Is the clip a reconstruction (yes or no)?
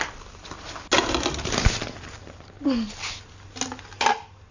no